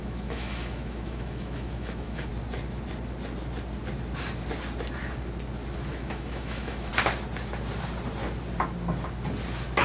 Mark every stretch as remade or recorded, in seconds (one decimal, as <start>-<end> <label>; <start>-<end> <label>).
0.0-2.3 remade; 2.3-5.9 recorded; 5.9-6.9 remade; 6.9-9.8 recorded